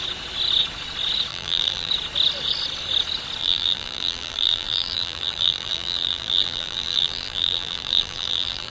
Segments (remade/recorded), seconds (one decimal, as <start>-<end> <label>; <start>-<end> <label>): 0.0-1.3 recorded; 1.3-1.9 remade; 1.9-3.4 recorded; 3.4-8.7 remade